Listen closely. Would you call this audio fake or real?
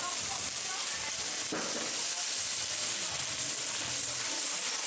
real